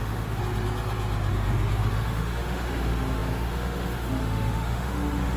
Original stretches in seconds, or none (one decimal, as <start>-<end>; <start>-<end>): 0.4-1.3